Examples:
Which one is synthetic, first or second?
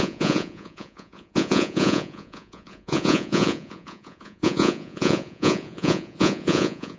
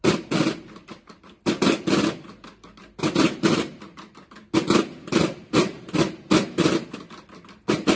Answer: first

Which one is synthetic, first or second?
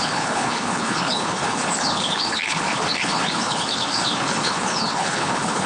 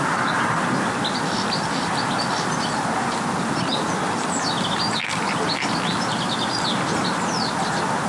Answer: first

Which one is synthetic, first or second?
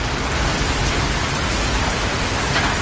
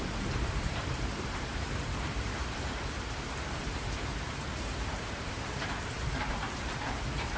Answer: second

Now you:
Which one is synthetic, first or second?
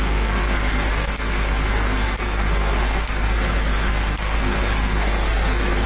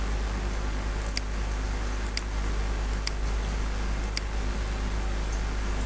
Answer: first